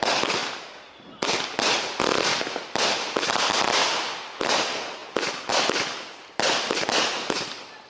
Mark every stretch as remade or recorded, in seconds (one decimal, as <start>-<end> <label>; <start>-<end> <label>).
0.0-3.8 recorded; 3.8-4.6 remade; 4.6-7.9 recorded